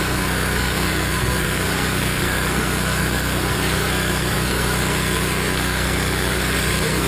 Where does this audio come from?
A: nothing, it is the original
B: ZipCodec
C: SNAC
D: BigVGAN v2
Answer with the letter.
C